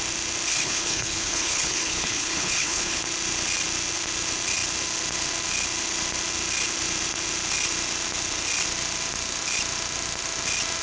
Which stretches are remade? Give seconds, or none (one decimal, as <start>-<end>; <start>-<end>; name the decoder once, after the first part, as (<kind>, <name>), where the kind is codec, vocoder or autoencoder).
0.5-3.0 (codec, HILCodec)